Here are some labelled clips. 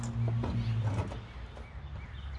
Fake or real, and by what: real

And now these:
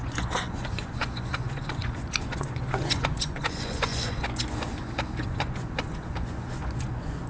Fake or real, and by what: fake, vocoder, Vocos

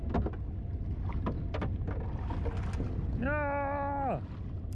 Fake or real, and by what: real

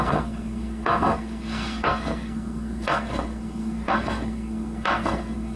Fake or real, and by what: fake, codec, SNAC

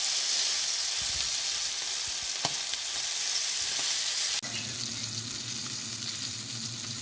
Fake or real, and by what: real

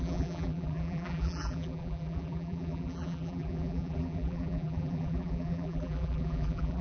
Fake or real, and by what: fake, vocoder, BigVGAN v2